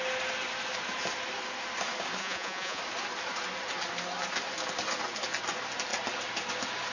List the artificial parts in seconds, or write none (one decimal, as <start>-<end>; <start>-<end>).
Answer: 2.2-2.8